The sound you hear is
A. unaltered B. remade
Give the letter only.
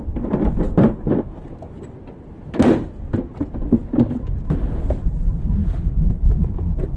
A